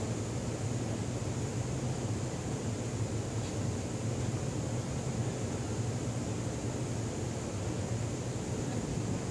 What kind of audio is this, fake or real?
real